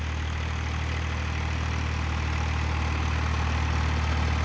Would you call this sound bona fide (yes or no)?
yes